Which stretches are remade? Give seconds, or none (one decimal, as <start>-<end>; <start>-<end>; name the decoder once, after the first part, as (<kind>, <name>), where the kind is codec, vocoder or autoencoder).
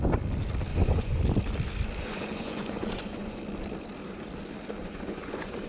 0.7-1.2 (vocoder, Vocos); 2.0-3.4; 4.8-5.7